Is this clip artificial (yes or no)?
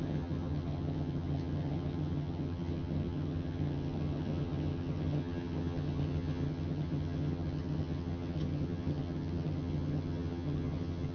yes